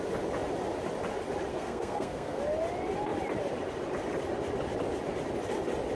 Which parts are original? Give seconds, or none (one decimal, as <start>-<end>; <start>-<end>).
0.0-1.5; 2.4-5.9